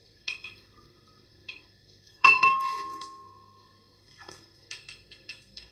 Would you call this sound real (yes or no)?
no